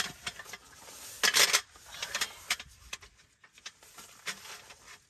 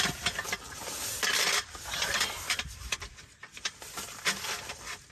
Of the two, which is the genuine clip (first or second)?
first